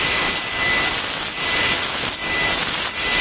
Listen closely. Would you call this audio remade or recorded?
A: recorded